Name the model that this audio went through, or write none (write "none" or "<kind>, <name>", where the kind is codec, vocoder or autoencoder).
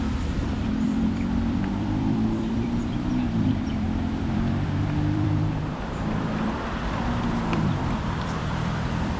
vocoder, BigVGAN v2